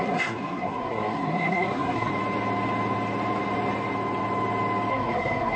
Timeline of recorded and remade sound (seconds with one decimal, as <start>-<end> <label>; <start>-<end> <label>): 0.0-2.1 remade; 2.1-4.9 recorded; 4.9-5.6 remade